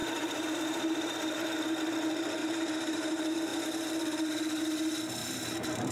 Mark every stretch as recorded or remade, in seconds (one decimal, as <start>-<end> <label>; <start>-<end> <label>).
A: 0.0-1.6 remade; 1.6-2.4 recorded; 2.4-3.1 remade; 3.1-5.2 recorded; 5.2-5.9 remade